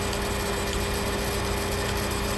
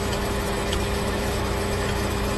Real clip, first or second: first